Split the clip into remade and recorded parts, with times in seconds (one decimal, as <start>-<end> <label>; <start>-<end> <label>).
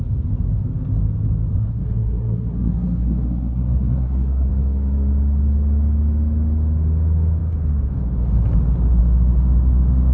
0.0-1.5 recorded; 1.5-4.5 remade; 4.5-10.1 recorded